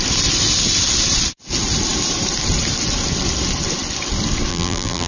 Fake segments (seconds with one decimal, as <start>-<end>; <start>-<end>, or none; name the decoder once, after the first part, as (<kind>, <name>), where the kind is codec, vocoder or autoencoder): 4.5-5.1 (vocoder, BigVGAN v2)